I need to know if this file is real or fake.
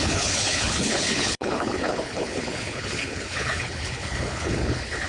fake